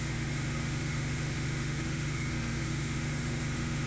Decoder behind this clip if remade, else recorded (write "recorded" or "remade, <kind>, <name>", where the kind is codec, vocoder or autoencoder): remade, autoencoder, DAC-VAE